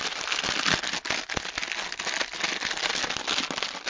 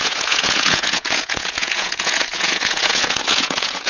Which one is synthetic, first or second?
second